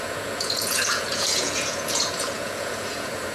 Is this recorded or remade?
remade